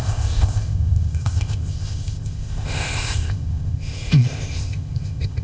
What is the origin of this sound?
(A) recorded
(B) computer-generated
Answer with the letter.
B